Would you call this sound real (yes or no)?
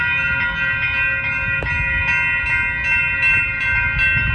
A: yes